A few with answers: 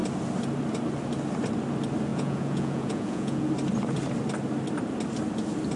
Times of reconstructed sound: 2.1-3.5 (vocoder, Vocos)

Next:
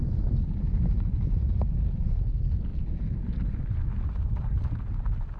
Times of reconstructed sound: 2.7-3.9 (vocoder, BigVGAN v2)

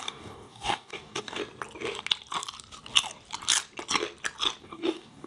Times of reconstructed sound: 0.0-1.4 (codec, DAC); 4.6-5.3